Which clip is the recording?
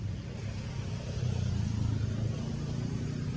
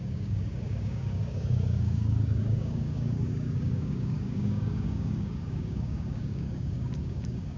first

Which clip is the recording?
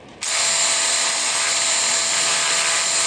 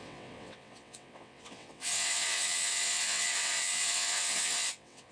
first